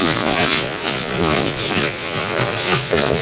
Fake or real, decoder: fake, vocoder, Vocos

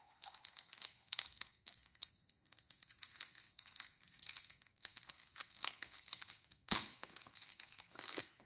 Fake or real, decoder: fake, codec, SNAC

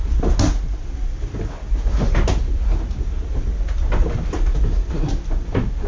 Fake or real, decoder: real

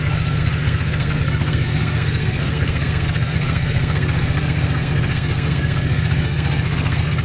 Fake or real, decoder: fake, codec, SNAC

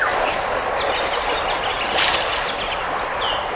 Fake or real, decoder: real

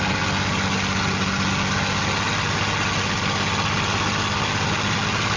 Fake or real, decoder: real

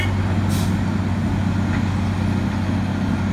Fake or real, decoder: real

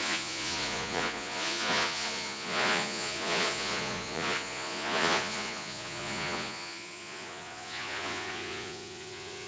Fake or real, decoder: fake, vocoder, Vocos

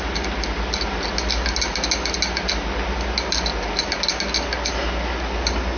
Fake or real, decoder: real